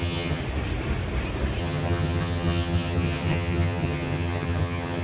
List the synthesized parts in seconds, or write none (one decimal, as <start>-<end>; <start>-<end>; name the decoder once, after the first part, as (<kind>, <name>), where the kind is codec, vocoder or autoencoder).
0.0-0.4 (vocoder, HiFi-GAN); 1.6-5.0